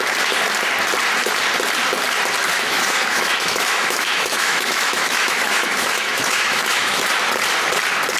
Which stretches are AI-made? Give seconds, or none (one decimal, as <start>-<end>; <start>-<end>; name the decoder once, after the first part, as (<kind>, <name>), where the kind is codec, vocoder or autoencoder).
2.5-7.1 (autoencoder, DAC-VAE)